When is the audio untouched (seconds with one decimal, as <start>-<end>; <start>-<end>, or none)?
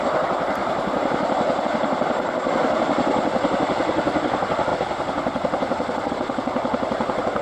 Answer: 0.0-0.6; 1.6-7.4